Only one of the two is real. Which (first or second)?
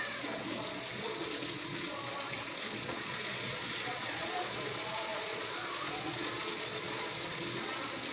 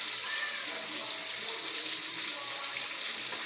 second